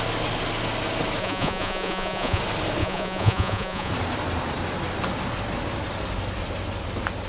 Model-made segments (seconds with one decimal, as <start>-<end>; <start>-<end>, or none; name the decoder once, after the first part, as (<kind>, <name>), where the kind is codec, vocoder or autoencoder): 1.2-2.4 (vocoder, Vocos); 2.8-3.9